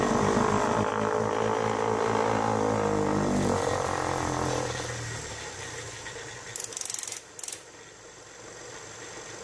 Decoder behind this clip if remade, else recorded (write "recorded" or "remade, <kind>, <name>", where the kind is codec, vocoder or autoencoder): recorded